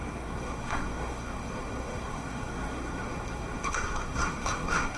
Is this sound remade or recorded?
remade